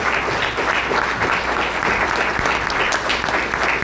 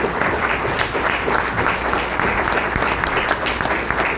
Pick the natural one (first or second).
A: first